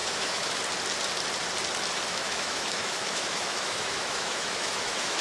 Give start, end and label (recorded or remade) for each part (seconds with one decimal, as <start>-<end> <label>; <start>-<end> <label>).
0.0-0.6 remade; 0.6-2.1 recorded; 2.1-5.2 remade